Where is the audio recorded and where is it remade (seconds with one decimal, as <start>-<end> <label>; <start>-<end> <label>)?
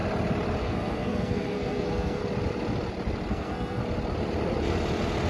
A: 0.0-0.6 recorded; 0.6-2.2 remade; 2.2-3.3 recorded; 3.3-3.8 remade; 3.8-5.3 recorded